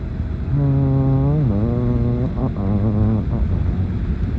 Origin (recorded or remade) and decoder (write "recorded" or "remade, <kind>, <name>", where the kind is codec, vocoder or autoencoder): recorded